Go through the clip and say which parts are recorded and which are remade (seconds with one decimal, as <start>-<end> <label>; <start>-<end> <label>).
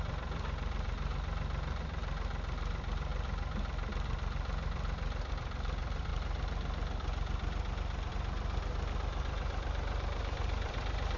0.0-2.0 remade; 2.0-2.7 recorded; 2.7-3.1 remade; 3.1-5.3 recorded; 5.3-6.1 remade; 6.1-8.1 recorded; 8.1-11.2 remade